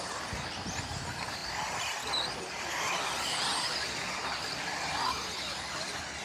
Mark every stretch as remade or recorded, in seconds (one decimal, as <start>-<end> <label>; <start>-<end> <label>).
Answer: 0.0-6.2 recorded